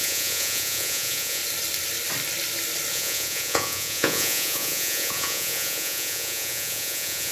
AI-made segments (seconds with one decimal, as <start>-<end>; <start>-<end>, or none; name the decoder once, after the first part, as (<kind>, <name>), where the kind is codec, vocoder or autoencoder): 0.0-1.4 (vocoder, Vocos); 2.9-7.3